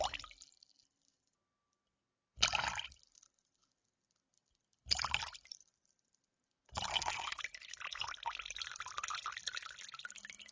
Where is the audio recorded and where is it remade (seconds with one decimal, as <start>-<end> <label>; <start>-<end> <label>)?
0.0-6.9 recorded; 6.9-7.4 remade; 7.4-10.5 recorded

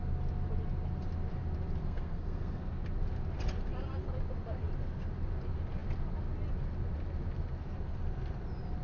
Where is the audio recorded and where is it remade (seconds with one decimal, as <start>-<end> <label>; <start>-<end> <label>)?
0.0-1.8 recorded; 1.8-2.6 remade; 2.6-8.8 recorded

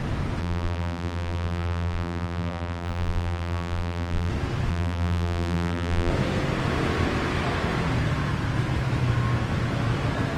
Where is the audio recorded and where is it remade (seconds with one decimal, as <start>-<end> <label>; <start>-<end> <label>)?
0.0-0.4 recorded; 0.4-4.3 remade; 4.3-4.7 recorded; 4.7-6.1 remade; 6.1-10.4 recorded

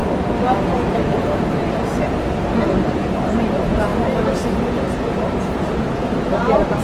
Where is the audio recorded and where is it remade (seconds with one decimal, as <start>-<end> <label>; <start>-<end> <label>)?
0.0-0.7 recorded; 0.7-6.8 remade

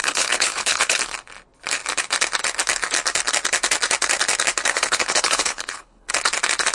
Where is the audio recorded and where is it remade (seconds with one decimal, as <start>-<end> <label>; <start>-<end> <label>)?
0.0-1.0 remade; 1.0-4.7 recorded; 4.7-6.1 remade; 6.1-6.7 recorded